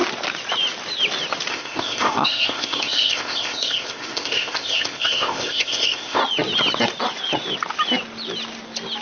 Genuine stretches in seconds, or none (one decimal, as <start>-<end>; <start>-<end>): 0.0-1.5; 6.2-9.0